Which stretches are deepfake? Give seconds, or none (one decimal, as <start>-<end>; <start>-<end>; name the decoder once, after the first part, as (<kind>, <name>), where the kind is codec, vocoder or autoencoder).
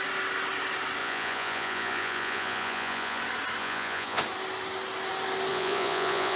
1.0-3.2 (vocoder, Vocos); 3.6-4.2; 5.5-6.4